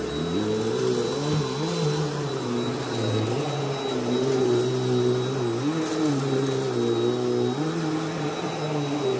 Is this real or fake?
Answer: real